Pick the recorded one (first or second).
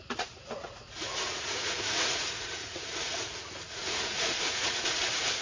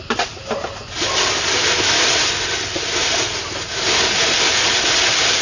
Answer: second